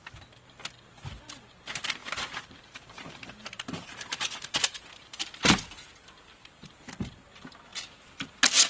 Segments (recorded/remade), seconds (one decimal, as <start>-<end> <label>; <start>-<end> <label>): 0.0-2.0 recorded; 2.0-6.7 remade; 6.7-8.7 recorded